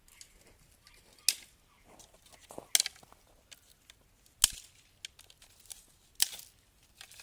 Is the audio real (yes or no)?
yes